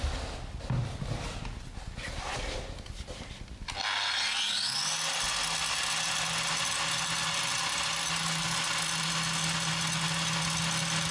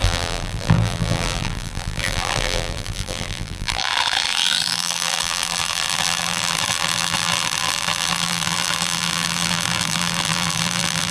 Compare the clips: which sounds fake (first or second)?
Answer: second